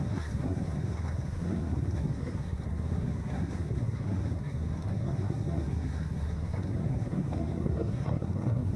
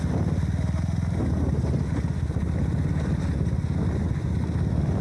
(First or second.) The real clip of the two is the second